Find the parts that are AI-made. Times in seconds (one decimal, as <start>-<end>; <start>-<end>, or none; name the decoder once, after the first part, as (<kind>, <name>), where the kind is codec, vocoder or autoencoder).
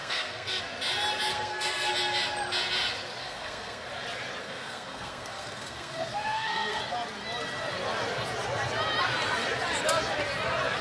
0.0-0.6 (codec, SNAC); 1.3-1.9; 3.2-3.9; 4.4-6.8